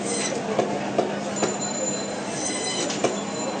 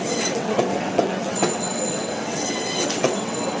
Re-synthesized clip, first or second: second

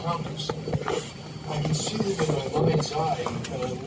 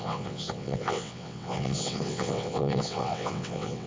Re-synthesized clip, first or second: second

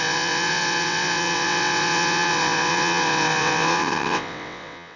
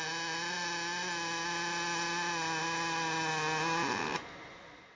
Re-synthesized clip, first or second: first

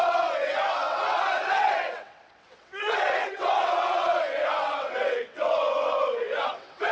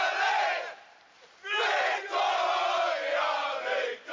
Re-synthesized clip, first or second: first